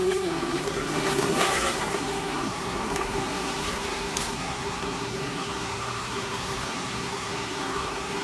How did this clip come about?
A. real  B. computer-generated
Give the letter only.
B